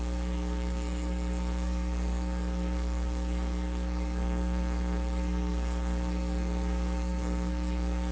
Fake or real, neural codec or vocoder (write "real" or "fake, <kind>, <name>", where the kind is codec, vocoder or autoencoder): fake, codec, SNAC